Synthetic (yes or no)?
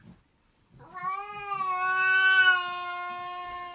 no